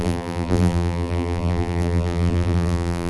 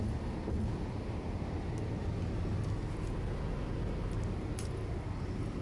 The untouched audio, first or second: second